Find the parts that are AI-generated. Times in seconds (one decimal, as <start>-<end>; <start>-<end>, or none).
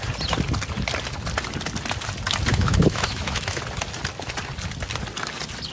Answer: 2.5-3.6